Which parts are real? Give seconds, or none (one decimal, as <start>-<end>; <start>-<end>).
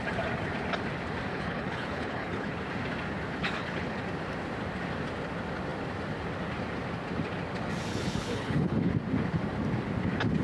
0.0-1.3; 2.6-3.4; 4.0-7.9; 8.9-10.4